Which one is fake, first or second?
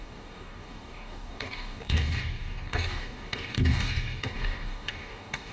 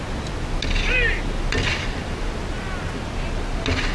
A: first